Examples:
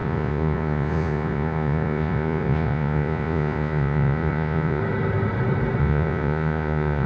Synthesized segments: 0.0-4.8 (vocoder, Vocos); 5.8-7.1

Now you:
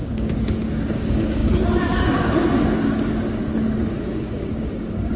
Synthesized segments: 0.0-5.2 (codec, DAC)

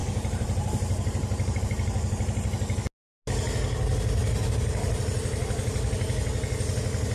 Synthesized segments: 0.0-1.6 (vocoder, BigVGAN v2); 4.2-5.0